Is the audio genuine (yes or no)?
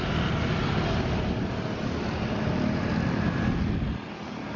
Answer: yes